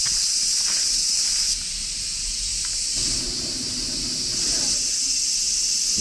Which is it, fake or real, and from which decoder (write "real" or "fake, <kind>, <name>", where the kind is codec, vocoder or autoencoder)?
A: real